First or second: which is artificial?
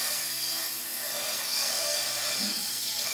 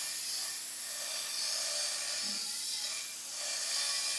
first